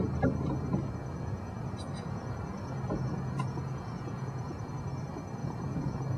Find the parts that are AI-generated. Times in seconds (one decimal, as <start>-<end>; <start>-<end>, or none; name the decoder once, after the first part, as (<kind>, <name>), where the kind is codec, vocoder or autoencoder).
1.0-4.7 (vocoder, Vocos); 5.4-6.2